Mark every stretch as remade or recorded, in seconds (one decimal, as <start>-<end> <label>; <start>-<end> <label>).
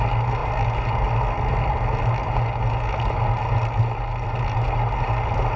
0.0-5.6 recorded